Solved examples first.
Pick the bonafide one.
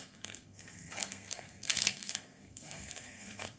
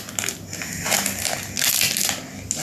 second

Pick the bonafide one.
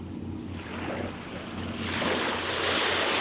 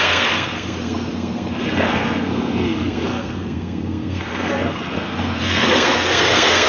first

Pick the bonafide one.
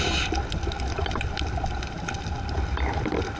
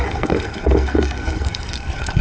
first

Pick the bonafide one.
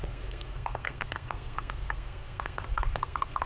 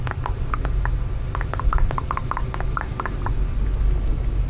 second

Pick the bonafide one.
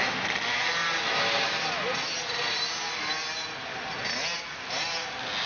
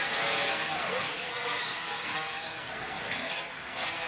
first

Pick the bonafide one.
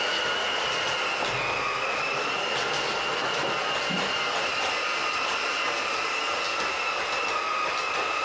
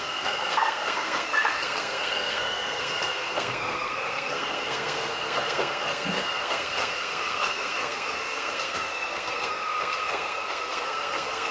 first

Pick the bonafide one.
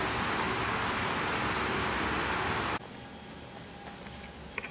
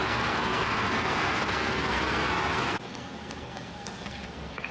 first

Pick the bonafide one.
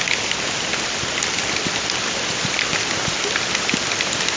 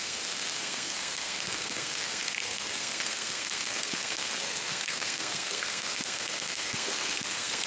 first